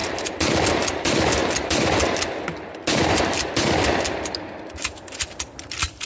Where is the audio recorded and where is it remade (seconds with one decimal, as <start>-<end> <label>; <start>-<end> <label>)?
0.0-0.7 recorded; 0.7-1.4 remade; 1.4-4.3 recorded; 4.3-6.1 remade